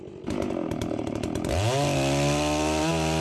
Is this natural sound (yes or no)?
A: yes